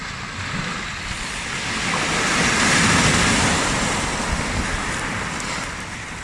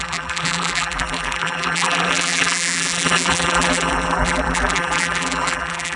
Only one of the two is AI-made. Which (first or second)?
second